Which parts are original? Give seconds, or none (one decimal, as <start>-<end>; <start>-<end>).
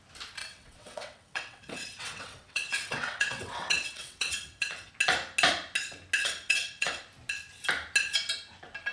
0.0-0.4; 4.9-6.2; 7.0-8.9